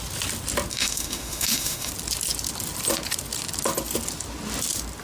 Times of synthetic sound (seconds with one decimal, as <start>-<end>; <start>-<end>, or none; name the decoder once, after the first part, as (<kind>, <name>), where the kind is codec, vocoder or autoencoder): 0.7-1.9 (autoencoder, DAC-VAE)